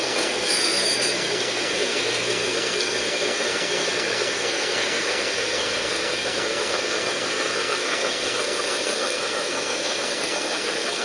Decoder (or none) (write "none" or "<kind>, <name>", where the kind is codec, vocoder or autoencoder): codec, SNAC